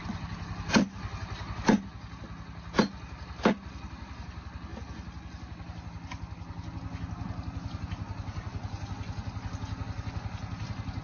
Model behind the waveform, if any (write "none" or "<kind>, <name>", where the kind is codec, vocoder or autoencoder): none